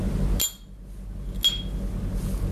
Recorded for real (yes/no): yes